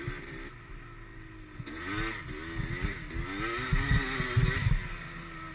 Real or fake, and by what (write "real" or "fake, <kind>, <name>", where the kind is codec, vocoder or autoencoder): real